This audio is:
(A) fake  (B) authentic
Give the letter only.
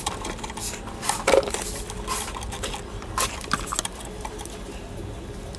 B